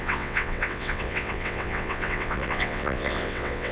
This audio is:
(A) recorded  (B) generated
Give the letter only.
B